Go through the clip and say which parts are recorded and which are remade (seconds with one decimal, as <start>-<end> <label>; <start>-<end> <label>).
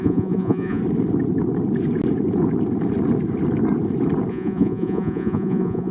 0.0-0.8 remade; 0.8-4.3 recorded; 4.3-5.9 remade